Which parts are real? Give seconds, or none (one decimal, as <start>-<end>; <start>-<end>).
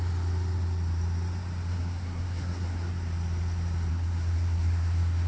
0.0-1.7; 2.9-3.9